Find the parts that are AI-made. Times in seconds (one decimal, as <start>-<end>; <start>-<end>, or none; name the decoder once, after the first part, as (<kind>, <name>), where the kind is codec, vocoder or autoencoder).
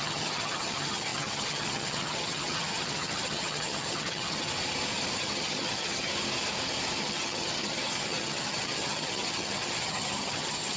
0.0-4.5 (vocoder, HiFi-GAN); 5.2-6.1; 7.0-10.8